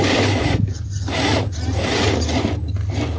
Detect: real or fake real